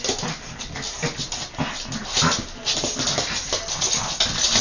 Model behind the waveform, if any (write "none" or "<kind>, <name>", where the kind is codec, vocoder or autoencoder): none